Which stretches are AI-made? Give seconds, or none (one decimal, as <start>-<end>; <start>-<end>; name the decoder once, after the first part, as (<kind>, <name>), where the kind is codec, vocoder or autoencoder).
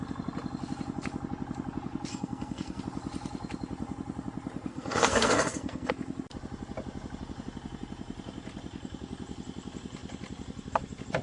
2.1-2.8 (codec, SNAC); 4.7-5.9